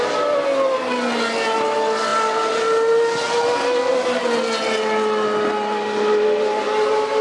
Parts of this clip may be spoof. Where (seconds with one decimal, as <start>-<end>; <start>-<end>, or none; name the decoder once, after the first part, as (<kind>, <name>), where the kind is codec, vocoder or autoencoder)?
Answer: none